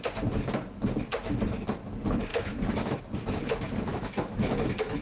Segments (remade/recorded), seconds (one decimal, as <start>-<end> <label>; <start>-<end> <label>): 0.0-2.3 recorded; 2.3-3.0 remade; 3.0-3.9 recorded; 3.9-5.0 remade